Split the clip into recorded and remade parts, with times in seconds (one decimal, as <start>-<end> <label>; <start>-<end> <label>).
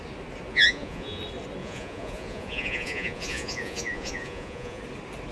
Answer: 0.0-0.5 recorded; 0.5-1.2 remade; 1.2-1.6 recorded; 1.6-4.8 remade; 4.8-5.3 recorded